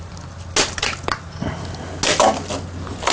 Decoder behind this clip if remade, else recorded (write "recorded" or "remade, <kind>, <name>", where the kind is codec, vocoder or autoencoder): recorded